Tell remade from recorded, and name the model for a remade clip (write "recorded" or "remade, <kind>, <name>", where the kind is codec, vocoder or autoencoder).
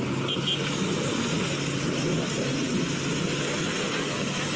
recorded